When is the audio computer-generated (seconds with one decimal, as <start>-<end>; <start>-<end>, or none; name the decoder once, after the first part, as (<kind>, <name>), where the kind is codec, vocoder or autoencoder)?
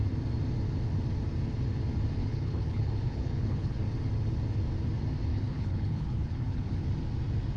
2.2-3.8 (codec, HILCodec); 5.3-6.9